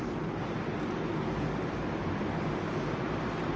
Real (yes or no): yes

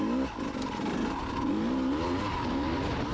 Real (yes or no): yes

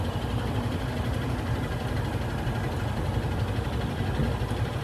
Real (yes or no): yes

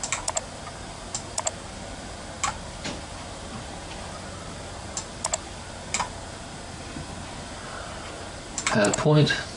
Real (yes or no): yes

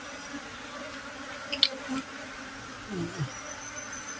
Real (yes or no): yes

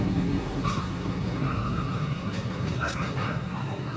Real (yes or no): no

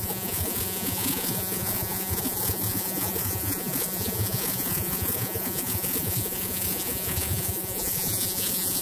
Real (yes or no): no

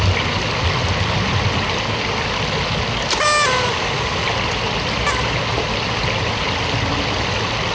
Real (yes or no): yes